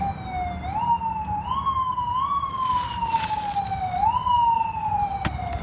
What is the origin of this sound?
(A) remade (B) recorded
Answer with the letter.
B